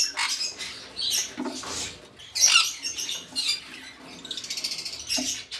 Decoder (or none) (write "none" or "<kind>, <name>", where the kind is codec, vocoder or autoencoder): none